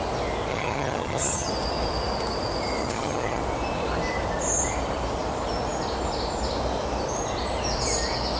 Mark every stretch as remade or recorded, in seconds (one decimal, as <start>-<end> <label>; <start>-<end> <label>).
0.0-0.5 recorded; 0.5-1.5 remade; 1.5-2.8 recorded; 2.8-3.4 remade; 3.4-8.4 recorded